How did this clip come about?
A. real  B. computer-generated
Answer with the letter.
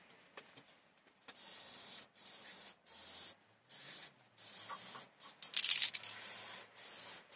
A